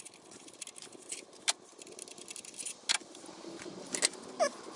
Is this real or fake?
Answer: real